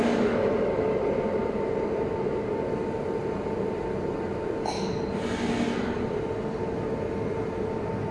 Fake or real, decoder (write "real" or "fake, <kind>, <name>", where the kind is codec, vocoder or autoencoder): real